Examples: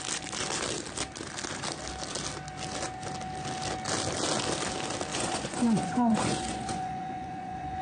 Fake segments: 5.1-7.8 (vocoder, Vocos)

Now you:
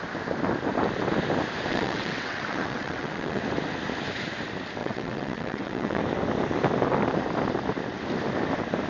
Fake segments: 1.7-3.4 (vocoder, WaveNeXt); 4.8-6.0

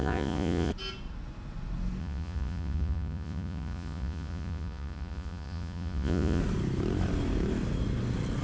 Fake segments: 0.0-0.7 (vocoder, Vocos); 2.0-6.4

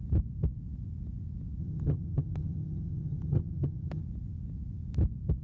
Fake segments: 1.6-4.0 (vocoder, HiFi-GAN)

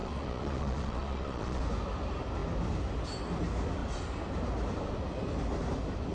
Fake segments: 0.0-1.6 (vocoder, Vocos)

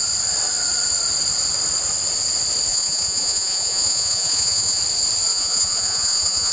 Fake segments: 2.7-4.8 (vocoder, Vocos); 5.3-6.5

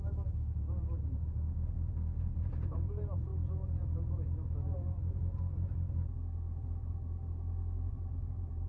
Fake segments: 0.0-1.2 (vocoder, BigVGAN v2); 2.2-3.3; 7.9-8.7